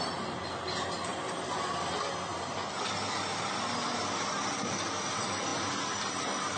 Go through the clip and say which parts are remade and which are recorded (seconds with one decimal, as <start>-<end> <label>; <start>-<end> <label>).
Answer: 0.0-6.6 recorded